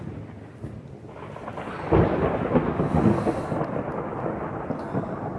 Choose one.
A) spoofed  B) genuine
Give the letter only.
B